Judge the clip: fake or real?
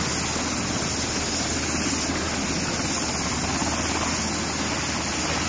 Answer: real